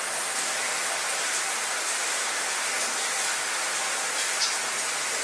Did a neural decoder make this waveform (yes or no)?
no